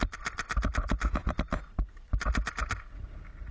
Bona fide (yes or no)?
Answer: yes